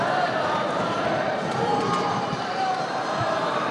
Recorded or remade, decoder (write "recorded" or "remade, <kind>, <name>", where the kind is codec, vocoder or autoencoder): remade, vocoder, BigVGAN v2